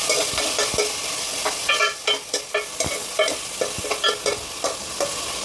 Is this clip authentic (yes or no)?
yes